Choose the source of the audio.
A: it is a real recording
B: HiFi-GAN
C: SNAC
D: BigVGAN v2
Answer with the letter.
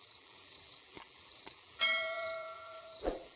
D